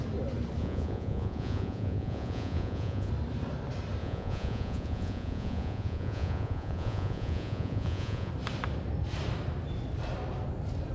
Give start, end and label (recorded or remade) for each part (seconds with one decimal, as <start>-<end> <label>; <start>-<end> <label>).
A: 0.0-0.6 recorded; 0.6-3.1 remade; 3.1-4.0 recorded; 4.0-8.3 remade; 8.3-10.9 recorded